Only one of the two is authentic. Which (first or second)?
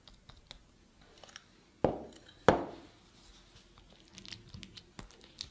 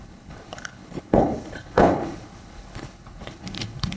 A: first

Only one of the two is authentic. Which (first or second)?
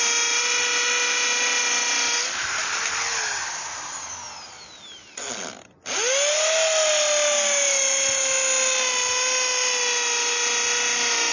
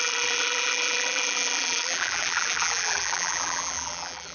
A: first